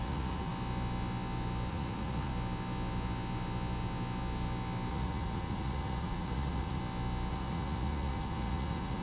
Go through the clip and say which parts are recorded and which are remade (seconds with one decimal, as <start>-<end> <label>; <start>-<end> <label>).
0.0-0.5 remade; 0.5-1.7 recorded; 1.7-2.3 remade; 2.3-4.9 recorded; 4.9-6.8 remade; 6.8-7.3 recorded; 7.3-9.0 remade